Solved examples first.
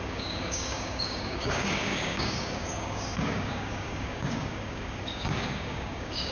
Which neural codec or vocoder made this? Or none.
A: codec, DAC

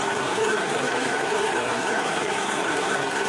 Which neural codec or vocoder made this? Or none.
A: codec, SNAC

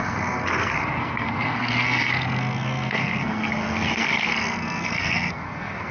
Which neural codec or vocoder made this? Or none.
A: codec, SNAC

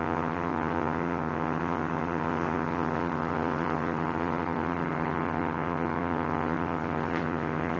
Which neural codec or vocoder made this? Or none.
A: vocoder, HiFi-GAN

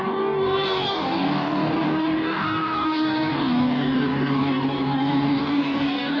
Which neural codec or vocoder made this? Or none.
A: codec, DAC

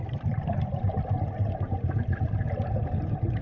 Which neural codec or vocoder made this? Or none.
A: none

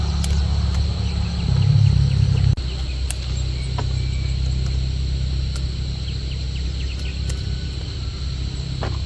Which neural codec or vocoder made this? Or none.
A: none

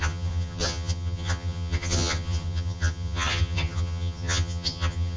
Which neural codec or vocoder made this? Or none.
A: vocoder, HiFi-GAN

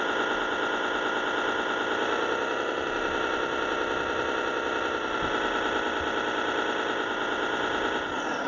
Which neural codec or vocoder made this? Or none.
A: none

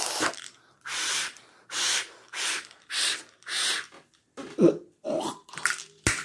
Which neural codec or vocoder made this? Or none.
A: none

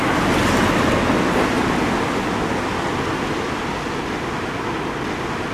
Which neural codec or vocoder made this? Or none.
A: none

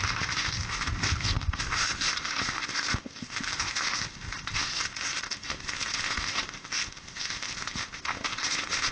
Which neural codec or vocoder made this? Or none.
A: codec, ZipCodec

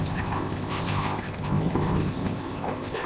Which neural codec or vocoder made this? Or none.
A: codec, ZipCodec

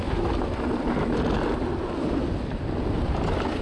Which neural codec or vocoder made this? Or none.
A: none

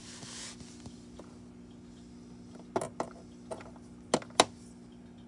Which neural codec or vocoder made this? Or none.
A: none